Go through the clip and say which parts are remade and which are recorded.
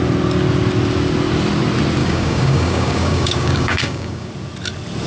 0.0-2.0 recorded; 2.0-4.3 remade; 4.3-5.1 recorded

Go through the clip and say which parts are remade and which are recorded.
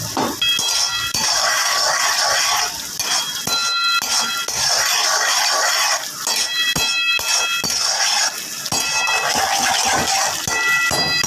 0.0-1.4 recorded; 1.4-2.0 remade; 2.0-11.3 recorded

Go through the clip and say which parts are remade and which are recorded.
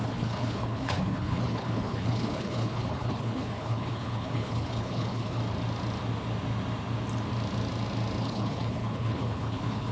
0.0-5.4 remade; 5.4-8.2 recorded; 8.2-9.9 remade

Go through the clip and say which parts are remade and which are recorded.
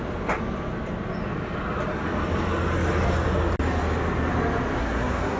0.0-4.8 recorded; 4.8-5.4 remade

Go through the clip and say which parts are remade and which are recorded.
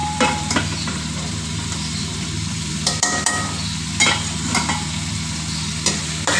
0.0-3.3 remade; 3.3-6.4 recorded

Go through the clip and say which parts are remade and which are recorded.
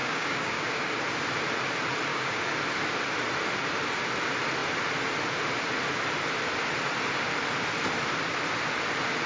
0.0-1.0 remade; 1.0-2.1 recorded; 2.1-2.6 remade; 2.6-9.3 recorded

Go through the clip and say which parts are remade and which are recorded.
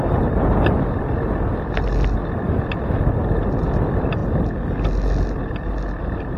0.0-6.4 recorded